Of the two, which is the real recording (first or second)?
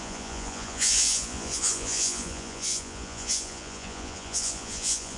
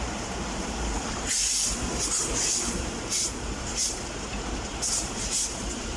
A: second